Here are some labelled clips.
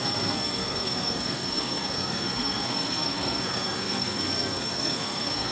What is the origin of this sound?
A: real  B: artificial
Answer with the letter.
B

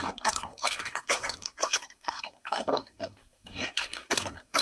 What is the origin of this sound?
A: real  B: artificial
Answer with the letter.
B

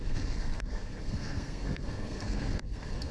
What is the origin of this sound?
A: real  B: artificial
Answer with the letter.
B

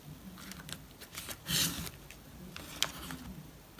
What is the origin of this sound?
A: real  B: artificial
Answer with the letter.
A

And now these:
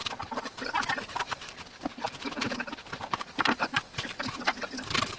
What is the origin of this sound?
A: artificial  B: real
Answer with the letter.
B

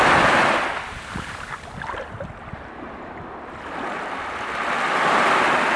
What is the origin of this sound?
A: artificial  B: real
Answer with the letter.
B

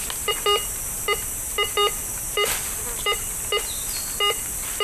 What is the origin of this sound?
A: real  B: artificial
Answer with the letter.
A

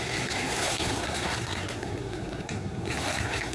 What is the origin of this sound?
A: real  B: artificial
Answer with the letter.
B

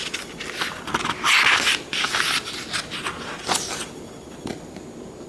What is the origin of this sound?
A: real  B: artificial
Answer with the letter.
A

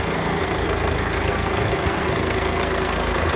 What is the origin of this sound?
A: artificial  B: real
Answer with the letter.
A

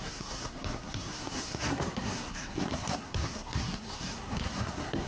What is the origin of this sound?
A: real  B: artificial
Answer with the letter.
B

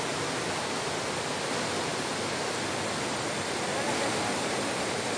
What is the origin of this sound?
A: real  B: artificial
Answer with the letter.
A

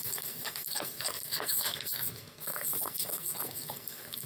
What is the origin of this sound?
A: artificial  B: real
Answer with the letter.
A